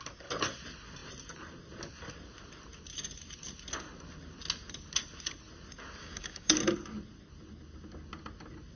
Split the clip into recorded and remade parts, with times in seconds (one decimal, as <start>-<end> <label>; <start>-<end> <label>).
0.0-6.0 recorded; 6.0-6.5 remade; 6.5-8.8 recorded

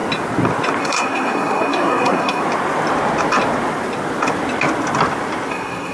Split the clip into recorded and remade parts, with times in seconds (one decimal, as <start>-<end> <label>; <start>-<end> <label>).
0.0-0.8 recorded; 0.8-2.4 remade; 2.4-5.5 recorded; 5.5-5.9 remade

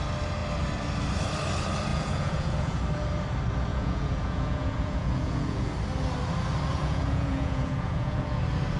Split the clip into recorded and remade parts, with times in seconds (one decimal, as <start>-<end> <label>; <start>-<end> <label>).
0.0-1.9 recorded; 1.9-2.8 remade; 2.8-3.7 recorded; 3.7-5.7 remade; 5.7-6.7 recorded; 6.7-8.4 remade; 8.4-8.8 recorded

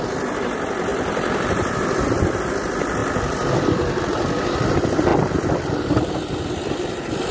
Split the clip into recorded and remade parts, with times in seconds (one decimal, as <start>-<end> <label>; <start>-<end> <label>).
0.0-0.9 recorded; 0.9-2.0 remade; 2.0-3.0 recorded; 3.0-4.0 remade; 4.0-5.1 recorded; 5.1-6.5 remade; 6.5-7.3 recorded

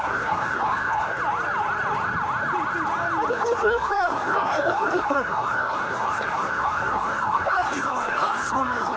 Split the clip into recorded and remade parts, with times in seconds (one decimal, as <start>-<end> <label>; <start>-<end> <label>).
0.0-1.2 remade; 1.2-3.3 recorded; 3.3-9.0 remade

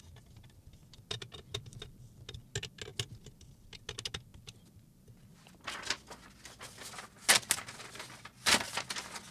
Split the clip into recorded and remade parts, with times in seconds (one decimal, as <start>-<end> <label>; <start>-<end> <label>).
0.0-9.3 recorded